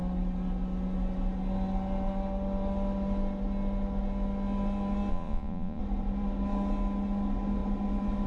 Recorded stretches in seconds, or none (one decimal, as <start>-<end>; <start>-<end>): 0.0-5.1; 5.8-8.3